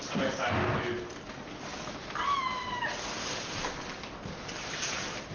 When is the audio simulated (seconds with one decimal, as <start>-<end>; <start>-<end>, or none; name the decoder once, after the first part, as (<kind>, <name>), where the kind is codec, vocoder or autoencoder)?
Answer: none